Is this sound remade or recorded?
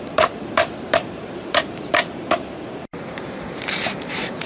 remade